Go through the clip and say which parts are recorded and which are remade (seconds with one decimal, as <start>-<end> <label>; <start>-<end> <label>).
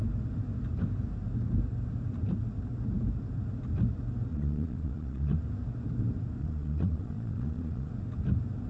0.0-4.3 recorded; 4.3-5.4 remade; 5.4-6.4 recorded; 6.4-7.9 remade; 7.9-8.7 recorded